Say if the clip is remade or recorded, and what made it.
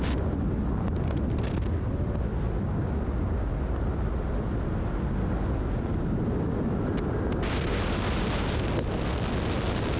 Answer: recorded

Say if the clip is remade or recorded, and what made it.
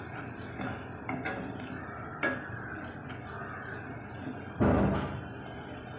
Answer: recorded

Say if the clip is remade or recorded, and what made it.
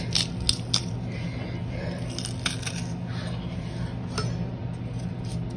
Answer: recorded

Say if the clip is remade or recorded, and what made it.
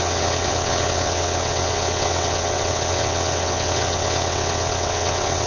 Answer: remade, vocoder, WaveNeXt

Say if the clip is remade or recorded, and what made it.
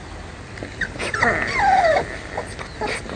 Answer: recorded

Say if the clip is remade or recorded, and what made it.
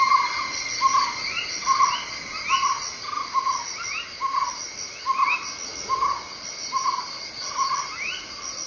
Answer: recorded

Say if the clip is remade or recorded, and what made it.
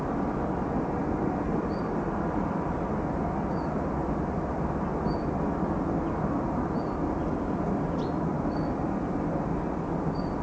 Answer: recorded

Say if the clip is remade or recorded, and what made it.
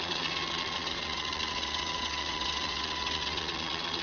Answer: remade, vocoder, WaveNeXt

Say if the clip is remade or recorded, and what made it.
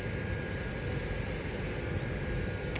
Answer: recorded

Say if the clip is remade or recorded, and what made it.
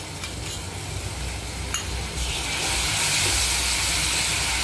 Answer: recorded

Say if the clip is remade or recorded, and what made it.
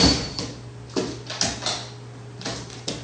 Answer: recorded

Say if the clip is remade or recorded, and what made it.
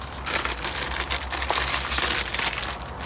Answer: recorded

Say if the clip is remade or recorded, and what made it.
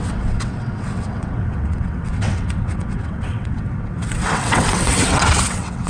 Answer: remade, vocoder, WaveNeXt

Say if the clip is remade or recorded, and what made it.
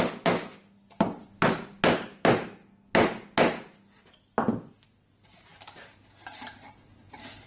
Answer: recorded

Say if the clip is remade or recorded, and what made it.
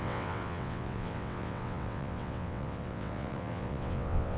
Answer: remade, vocoder, WaveNeXt